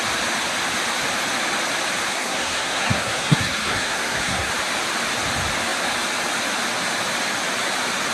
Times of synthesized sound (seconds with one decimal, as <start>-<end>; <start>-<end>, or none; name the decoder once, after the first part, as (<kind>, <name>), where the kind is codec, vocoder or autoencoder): 2.1-4.5 (codec, SNAC)

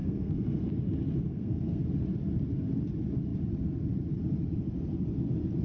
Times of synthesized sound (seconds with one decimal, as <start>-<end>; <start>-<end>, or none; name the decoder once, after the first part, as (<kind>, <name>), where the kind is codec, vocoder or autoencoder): 0.0-0.6 (codec, SNAC); 1.3-1.8

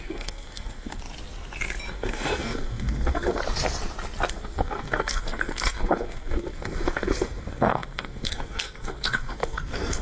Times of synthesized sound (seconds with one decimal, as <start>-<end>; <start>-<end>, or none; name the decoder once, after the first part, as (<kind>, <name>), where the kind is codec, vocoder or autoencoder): 0.0-1.0 (codec, SNAC); 1.9-3.4; 4.3-10.0

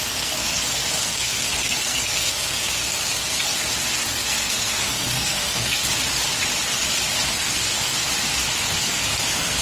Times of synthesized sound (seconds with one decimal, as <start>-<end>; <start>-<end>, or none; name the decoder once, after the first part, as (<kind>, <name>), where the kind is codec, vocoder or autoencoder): 0.0-3.5 (codec, SNAC); 4.1-5.8; 7.3-8.0; 8.6-9.6

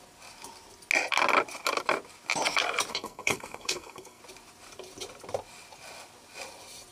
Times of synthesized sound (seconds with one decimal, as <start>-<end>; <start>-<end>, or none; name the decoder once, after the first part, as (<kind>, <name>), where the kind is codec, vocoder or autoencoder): 2.9-4.2 (codec, SNAC)

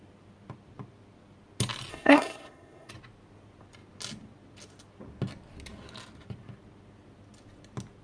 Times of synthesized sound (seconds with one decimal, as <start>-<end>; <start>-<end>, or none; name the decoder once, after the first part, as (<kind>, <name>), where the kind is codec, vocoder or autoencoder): 1.9-2.9 (codec, SNAC)